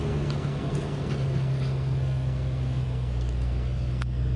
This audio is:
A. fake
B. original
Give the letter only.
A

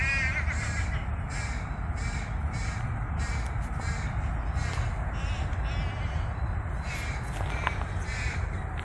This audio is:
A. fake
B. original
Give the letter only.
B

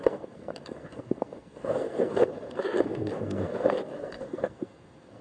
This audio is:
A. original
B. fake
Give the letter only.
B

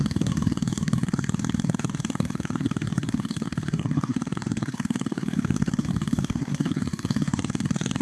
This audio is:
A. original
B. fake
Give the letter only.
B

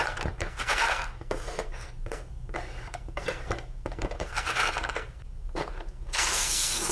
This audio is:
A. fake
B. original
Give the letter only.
A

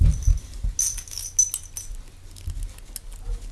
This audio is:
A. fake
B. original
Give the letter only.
B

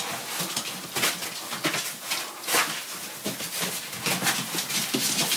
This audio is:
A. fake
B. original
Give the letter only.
B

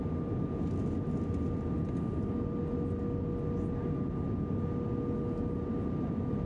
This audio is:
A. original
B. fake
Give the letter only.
A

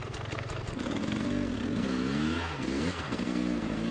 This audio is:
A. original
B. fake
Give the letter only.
B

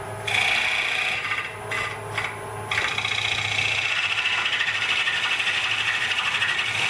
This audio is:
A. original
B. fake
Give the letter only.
A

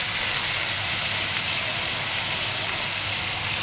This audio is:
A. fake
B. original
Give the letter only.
B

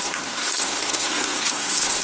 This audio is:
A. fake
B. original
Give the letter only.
A